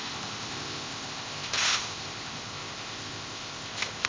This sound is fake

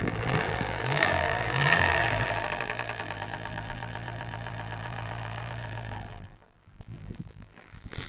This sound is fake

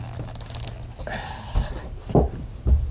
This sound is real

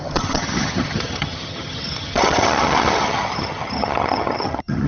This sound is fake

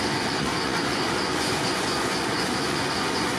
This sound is fake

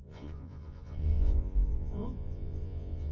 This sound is fake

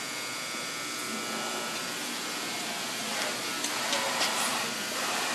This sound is real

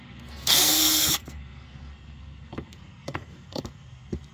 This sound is fake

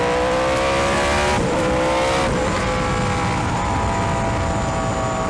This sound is real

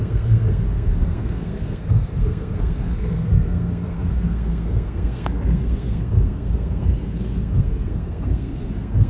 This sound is fake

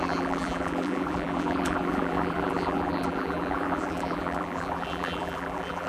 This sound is fake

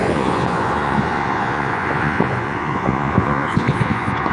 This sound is fake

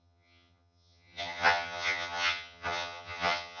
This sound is fake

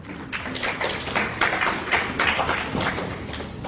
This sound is real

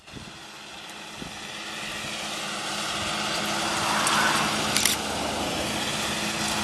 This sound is real